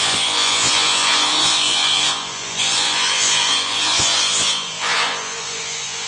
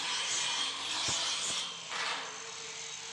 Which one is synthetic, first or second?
first